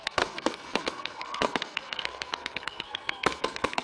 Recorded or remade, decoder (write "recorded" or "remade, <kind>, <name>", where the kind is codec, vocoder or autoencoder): remade, codec, SNAC